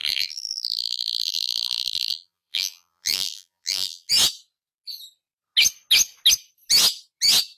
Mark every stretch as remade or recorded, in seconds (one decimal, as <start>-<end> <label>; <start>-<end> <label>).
0.0-4.1 remade; 4.1-7.6 recorded